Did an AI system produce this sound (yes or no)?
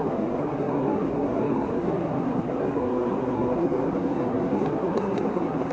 yes